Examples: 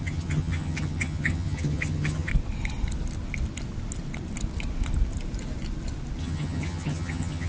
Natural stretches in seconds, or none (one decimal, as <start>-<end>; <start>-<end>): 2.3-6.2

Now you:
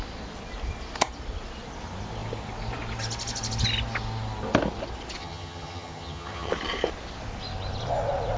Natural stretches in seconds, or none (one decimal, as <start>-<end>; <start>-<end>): 0.0-5.2; 6.5-8.4

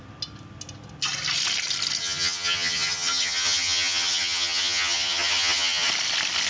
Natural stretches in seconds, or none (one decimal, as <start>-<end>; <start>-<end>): 0.0-2.0; 5.9-6.5